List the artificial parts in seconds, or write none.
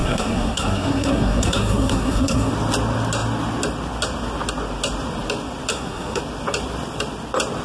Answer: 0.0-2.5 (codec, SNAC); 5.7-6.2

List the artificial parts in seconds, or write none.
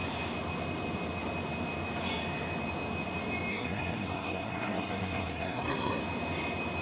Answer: 3.5-6.0 (codec, SNAC)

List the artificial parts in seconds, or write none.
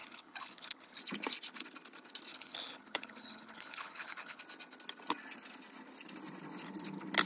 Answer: 0.0-1.0 (codec, HILCodec); 2.3-4.4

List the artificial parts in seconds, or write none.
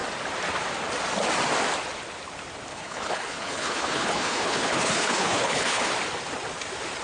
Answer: 2.7-5.9 (codec, HILCodec)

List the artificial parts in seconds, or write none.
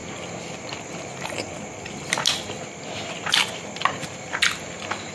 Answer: none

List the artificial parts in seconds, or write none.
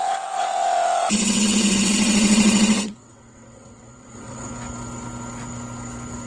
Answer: 0.0-4.5 (vocoder, WaveNeXt)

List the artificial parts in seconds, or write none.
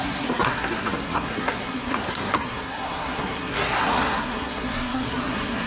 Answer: 0.0-5.7 (codec, SNAC)